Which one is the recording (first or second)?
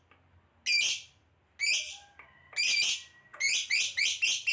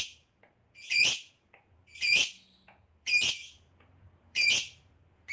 first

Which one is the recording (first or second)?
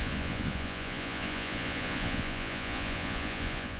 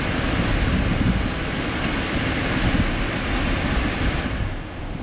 second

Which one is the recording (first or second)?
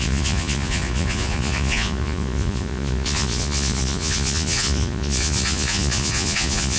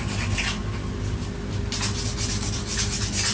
second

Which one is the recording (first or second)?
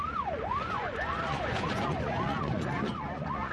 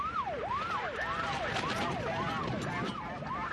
second